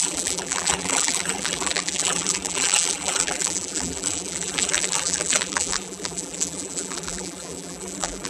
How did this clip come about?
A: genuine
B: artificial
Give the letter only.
B